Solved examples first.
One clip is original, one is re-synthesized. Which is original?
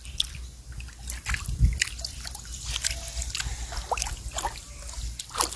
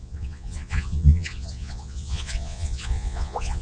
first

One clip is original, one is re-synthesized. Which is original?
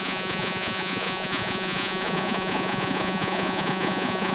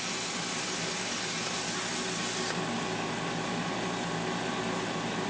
second